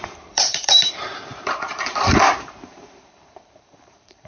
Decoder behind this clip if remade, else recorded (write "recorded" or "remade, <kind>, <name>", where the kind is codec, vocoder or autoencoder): remade, vocoder, BigVGAN v2